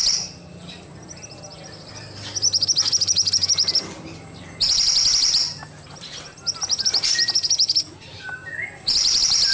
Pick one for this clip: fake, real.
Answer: real